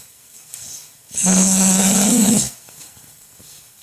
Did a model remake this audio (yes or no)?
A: yes